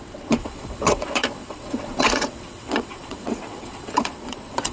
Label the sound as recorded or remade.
remade